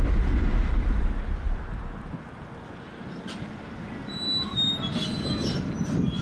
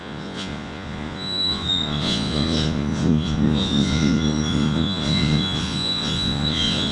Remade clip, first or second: second